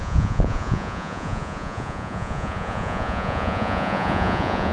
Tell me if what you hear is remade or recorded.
remade